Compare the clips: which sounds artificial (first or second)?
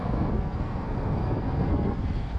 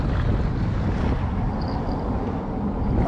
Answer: first